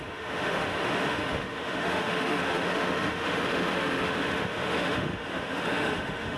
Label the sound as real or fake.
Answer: fake